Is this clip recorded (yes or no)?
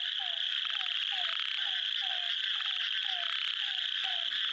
yes